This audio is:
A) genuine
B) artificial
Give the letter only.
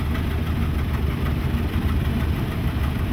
B